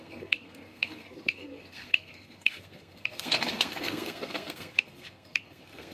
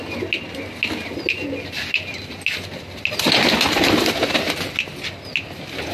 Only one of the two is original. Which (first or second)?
second